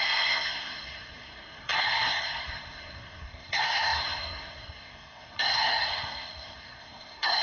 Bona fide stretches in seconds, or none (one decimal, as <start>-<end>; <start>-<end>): none